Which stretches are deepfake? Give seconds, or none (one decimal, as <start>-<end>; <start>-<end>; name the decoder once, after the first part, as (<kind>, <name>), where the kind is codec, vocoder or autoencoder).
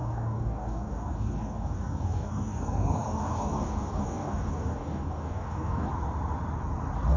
0.0-5.9 (codec, DAC)